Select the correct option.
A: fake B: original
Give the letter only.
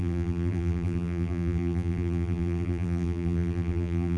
A